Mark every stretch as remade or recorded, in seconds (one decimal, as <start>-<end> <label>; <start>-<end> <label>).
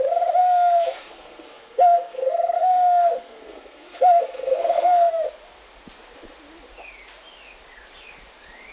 0.0-0.4 recorded; 0.4-5.1 remade; 5.1-8.7 recorded